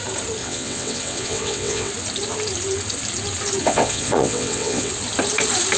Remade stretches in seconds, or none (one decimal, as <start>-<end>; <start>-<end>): 0.4-1.9; 3.6-4.9